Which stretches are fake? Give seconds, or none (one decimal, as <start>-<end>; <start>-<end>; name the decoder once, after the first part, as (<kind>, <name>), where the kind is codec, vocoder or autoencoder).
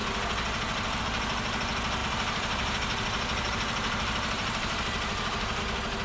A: 2.0-5.6 (vocoder, BigVGAN v2)